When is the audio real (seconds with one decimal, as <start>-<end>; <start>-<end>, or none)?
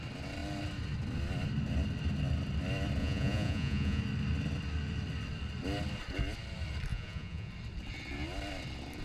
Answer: 0.0-3.0; 4.0-6.9; 7.5-9.0